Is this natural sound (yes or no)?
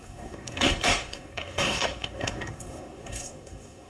no